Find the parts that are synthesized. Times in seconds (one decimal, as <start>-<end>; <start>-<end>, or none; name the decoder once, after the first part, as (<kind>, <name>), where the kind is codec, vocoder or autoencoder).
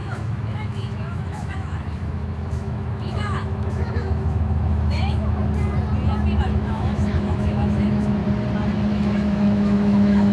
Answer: 0.0-5.4 (autoencoder, DAC-VAE); 6.4-8.2; 8.9-10.3